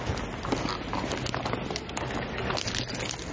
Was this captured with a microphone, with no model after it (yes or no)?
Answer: yes